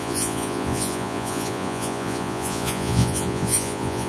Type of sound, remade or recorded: remade